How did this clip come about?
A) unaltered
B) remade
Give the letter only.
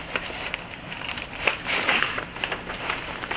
B